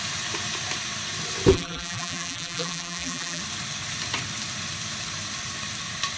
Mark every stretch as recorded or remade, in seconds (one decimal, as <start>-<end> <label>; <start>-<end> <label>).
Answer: 0.0-1.5 recorded; 1.5-3.4 remade; 3.4-6.2 recorded